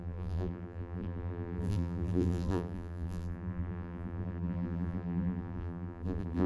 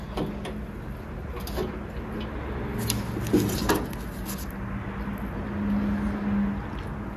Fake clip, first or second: first